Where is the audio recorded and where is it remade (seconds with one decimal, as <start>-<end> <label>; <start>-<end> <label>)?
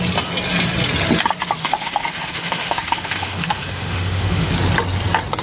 0.0-1.6 recorded; 1.6-4.5 remade; 4.5-5.4 recorded